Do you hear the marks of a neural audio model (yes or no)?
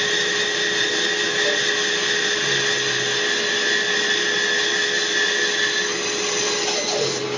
no